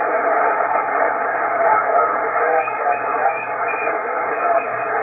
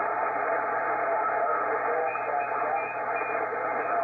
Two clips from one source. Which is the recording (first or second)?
second